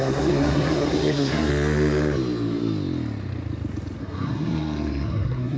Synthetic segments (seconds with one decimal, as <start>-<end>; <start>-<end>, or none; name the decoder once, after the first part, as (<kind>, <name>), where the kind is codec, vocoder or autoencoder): 0.0-1.5 (codec, SNAC); 4.0-5.6